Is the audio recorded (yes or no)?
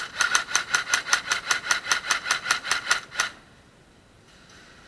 no